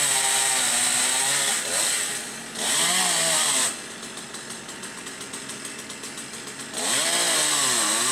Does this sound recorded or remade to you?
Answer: recorded